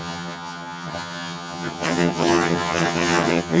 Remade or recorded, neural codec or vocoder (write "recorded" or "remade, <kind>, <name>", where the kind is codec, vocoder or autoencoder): remade, vocoder, HiFi-GAN